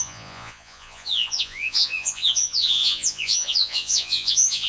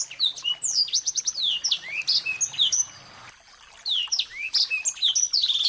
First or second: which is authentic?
second